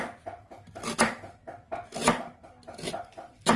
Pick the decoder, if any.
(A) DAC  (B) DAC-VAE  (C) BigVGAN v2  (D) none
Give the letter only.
D